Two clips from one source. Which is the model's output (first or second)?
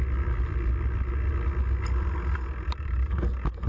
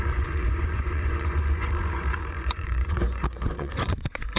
second